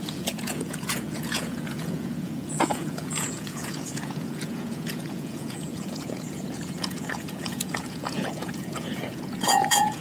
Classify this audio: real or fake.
fake